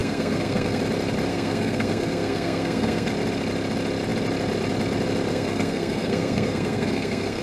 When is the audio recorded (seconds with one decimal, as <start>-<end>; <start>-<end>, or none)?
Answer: 0.8-1.3; 3.1-5.3